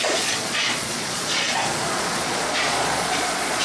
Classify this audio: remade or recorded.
remade